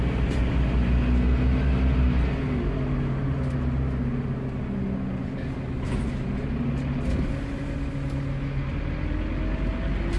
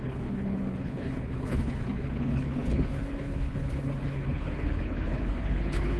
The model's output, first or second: second